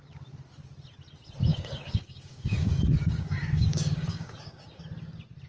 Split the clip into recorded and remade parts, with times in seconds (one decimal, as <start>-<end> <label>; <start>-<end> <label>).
0.0-1.5 recorded; 1.5-4.8 remade; 4.8-5.5 recorded